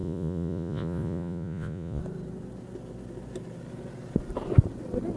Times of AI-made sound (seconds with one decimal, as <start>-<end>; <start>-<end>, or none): 0.0-2.0